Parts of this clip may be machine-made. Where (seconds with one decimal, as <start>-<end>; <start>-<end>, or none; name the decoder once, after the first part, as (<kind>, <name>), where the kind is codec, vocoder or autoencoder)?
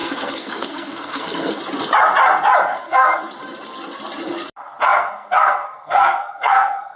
0.0-1.6 (codec, SNAC); 2.7-3.2; 4.8-7.0